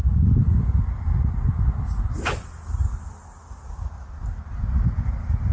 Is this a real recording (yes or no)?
yes